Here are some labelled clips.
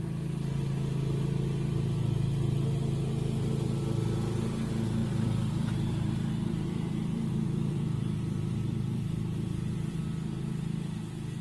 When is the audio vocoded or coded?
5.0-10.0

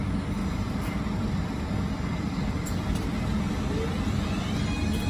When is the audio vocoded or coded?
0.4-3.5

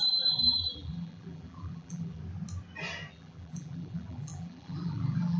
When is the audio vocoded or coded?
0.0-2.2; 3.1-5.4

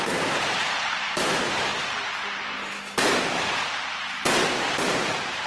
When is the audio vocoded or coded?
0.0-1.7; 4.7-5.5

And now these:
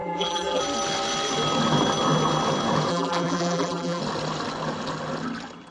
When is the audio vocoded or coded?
0.0-0.6; 2.9-4.0

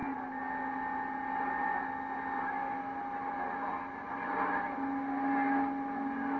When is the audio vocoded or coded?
none

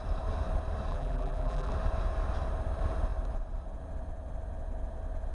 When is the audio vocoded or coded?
0.9-1.7